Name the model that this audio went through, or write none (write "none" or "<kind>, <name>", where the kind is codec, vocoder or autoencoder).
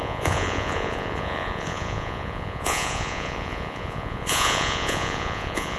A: vocoder, Vocos